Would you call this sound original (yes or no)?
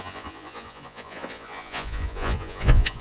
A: no